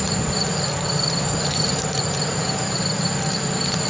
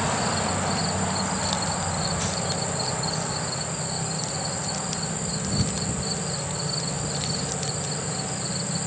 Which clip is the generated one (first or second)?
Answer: first